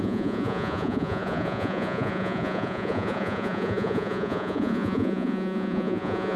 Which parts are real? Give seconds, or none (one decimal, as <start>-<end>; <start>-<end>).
none